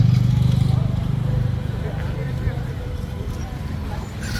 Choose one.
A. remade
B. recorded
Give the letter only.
A